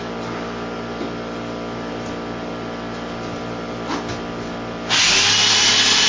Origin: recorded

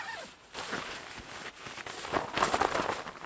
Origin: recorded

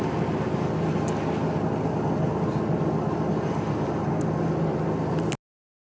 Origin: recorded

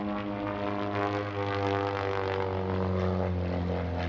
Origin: recorded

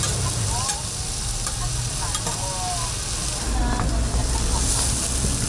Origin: recorded